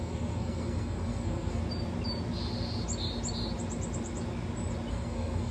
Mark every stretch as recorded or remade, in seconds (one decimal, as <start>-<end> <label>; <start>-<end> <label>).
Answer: 0.0-1.6 remade; 1.6-4.9 recorded; 4.9-5.5 remade